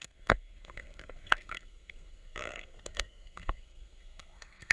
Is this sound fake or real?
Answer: fake